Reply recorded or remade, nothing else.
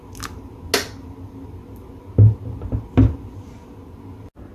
recorded